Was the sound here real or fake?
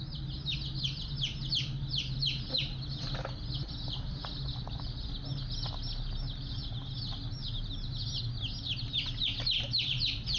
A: real